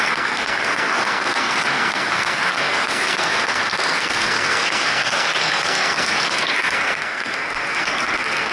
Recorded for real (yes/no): no